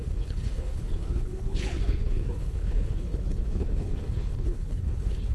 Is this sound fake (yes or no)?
yes